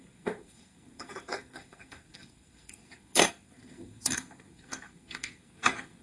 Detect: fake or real fake